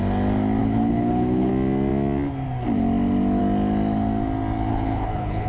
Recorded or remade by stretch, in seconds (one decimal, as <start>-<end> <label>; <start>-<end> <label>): 0.0-0.6 recorded; 0.6-1.5 remade; 1.5-4.7 recorded; 4.7-5.5 remade